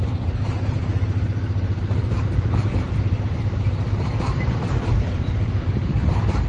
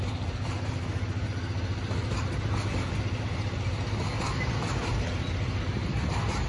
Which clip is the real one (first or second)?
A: second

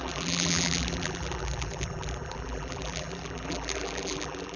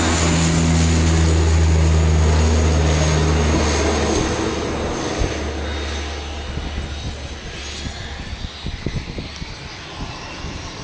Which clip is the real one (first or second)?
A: second